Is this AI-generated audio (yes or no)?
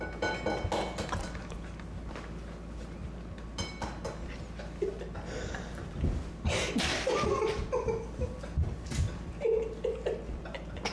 no